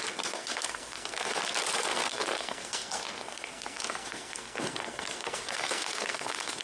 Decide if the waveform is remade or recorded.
remade